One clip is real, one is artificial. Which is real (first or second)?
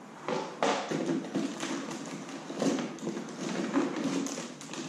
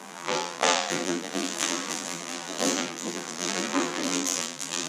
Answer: first